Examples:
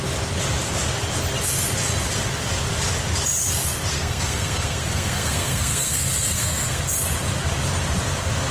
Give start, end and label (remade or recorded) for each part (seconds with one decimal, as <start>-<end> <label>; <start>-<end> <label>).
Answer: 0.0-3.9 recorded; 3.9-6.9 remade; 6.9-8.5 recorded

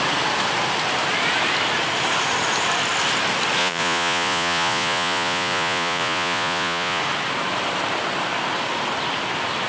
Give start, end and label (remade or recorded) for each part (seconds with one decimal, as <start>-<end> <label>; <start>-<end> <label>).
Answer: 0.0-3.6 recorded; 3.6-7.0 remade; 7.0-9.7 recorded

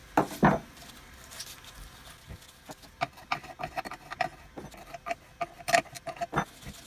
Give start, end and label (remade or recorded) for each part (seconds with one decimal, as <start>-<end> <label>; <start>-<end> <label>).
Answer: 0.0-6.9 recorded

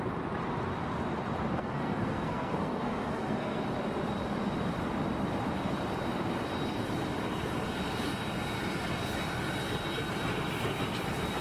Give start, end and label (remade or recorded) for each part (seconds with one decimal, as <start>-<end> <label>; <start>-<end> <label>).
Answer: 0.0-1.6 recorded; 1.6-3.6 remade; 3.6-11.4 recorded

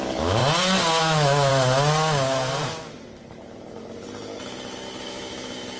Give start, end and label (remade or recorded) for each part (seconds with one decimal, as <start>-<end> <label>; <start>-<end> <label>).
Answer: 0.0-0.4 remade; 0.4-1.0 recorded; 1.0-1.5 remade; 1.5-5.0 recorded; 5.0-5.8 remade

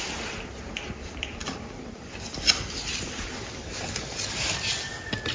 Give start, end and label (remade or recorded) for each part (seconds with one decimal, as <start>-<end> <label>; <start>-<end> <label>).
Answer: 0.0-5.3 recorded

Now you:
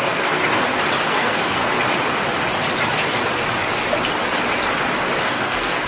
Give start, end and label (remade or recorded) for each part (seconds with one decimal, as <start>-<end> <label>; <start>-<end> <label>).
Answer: 0.0-0.4 remade; 0.4-1.0 recorded; 1.0-1.7 remade; 1.7-5.2 recorded; 5.2-5.9 remade

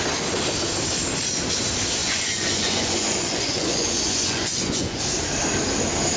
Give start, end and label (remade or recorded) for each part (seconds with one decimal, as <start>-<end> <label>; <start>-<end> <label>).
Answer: 0.0-2.0 recorded; 2.0-5.0 remade; 5.0-6.2 recorded